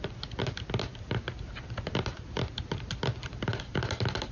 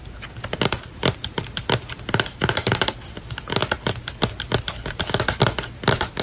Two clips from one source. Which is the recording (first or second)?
second